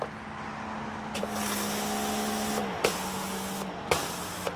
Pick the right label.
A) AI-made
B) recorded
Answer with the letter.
B